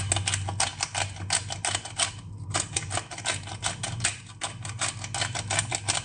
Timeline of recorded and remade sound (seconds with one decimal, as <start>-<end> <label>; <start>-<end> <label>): 0.0-6.0 recorded